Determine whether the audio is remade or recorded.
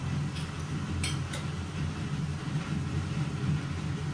recorded